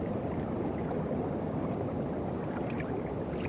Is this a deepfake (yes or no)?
no